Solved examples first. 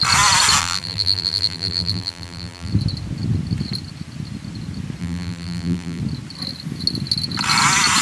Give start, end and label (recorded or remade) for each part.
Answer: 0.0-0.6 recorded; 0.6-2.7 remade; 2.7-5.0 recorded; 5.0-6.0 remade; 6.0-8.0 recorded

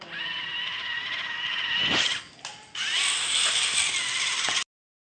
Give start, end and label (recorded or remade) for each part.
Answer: 0.0-5.1 recorded